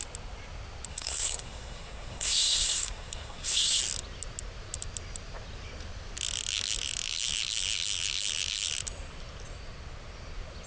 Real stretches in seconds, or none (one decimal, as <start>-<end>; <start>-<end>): 0.0-0.9; 3.8-10.7